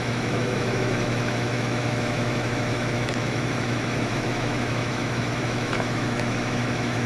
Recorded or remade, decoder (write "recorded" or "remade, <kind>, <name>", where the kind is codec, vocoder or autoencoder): remade, autoencoder, DAC-VAE